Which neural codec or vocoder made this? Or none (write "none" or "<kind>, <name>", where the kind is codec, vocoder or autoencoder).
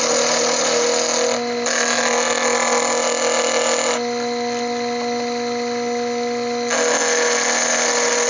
none